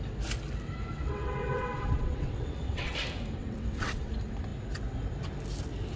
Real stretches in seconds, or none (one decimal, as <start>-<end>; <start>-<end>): 0.0-1.0; 2.9-3.4; 4.1-6.0

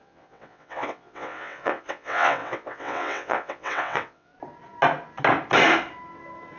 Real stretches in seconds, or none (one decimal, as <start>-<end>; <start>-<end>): 4.3-6.6

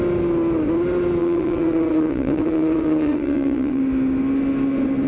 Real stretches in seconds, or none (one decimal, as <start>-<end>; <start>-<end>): 0.0-1.2; 3.8-5.1

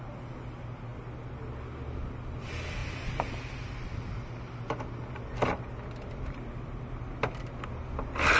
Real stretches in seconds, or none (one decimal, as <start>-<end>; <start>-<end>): 0.0-8.4

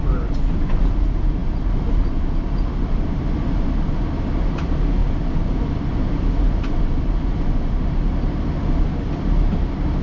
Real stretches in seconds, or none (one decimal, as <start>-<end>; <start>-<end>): 0.0-10.0

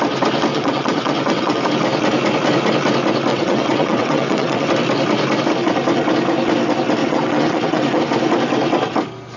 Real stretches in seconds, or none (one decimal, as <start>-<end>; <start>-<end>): 0.0-0.5; 1.6-3.3; 4.7-7.0; 8.0-9.4

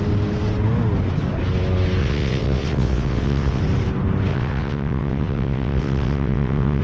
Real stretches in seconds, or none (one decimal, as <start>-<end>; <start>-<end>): 0.0-2.0; 3.6-4.3

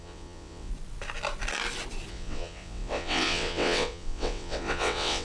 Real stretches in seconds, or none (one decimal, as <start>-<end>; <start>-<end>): 0.7-2.1